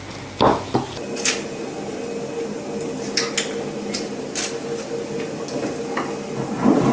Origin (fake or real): real